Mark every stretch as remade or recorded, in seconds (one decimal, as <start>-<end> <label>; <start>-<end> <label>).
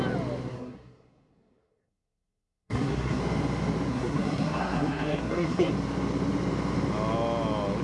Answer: 0.0-0.5 recorded; 0.5-3.2 remade; 3.2-3.9 recorded; 3.9-5.7 remade; 5.7-7.8 recorded